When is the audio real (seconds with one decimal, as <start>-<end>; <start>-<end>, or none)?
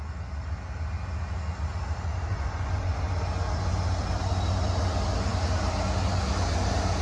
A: 0.0-2.3; 2.9-7.0